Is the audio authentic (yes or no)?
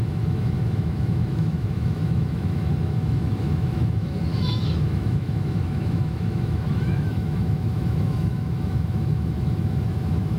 no